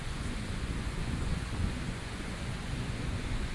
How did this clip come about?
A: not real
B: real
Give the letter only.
A